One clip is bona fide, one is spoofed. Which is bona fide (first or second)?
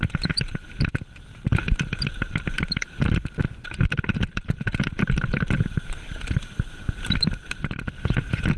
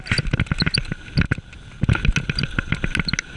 second